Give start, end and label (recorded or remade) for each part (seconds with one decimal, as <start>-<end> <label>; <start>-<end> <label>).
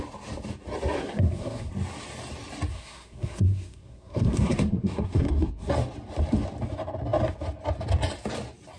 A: 0.0-1.0 recorded; 1.0-1.7 remade; 1.7-2.7 recorded; 2.7-5.7 remade; 5.7-8.8 recorded